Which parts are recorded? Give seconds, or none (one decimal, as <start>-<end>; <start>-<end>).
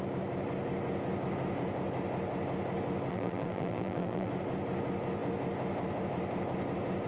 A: 0.0-3.1; 4.3-7.1